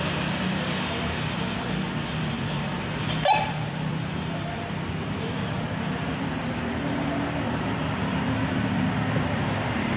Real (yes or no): no